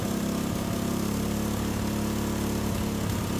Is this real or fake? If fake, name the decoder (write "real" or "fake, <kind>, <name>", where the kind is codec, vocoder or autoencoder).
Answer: real